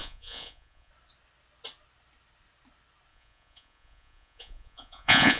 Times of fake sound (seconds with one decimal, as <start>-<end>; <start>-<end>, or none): 0.0-0.9; 3.1-5.4